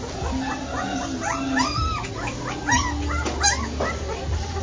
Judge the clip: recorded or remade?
recorded